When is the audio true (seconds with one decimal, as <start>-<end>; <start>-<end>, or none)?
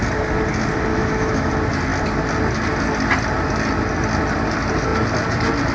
0.0-0.9; 1.5-5.7